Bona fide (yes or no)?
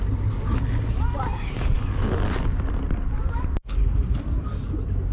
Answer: yes